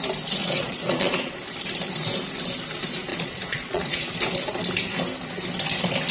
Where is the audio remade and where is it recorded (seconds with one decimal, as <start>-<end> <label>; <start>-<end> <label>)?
0.0-0.4 recorded; 0.4-1.3 remade; 1.3-3.1 recorded; 3.1-4.1 remade; 4.1-6.1 recorded